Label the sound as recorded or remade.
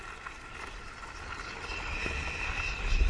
recorded